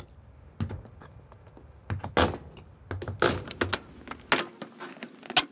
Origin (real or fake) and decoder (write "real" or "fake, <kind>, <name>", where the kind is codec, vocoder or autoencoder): real